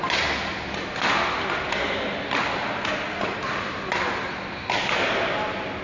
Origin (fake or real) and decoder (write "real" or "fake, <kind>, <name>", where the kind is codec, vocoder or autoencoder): real